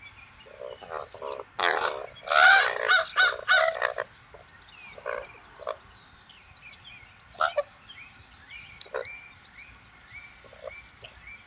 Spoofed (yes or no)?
no